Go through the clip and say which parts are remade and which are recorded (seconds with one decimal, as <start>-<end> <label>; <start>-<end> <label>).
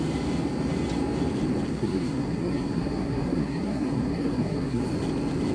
0.0-1.7 recorded; 1.7-4.8 remade; 4.8-5.5 recorded